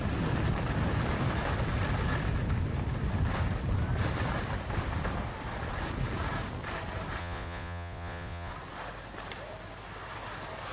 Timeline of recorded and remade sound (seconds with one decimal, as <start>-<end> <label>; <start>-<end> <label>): 0.0-7.2 recorded; 7.2-8.5 remade; 8.5-10.7 recorded